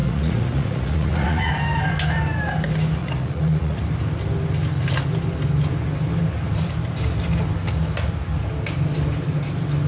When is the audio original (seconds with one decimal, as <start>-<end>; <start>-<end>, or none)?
1.5-3.0; 3.8-9.9